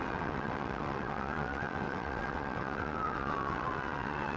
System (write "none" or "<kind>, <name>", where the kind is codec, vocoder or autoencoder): vocoder, WaveNeXt